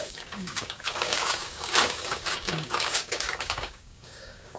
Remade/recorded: remade